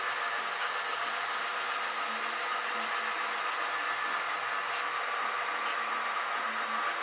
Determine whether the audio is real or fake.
real